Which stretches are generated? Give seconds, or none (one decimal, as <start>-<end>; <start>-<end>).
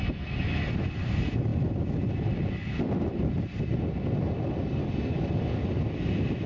none